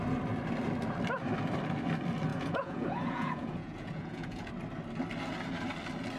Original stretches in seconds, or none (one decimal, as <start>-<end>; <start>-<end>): 0.0-2.3; 4.5-6.2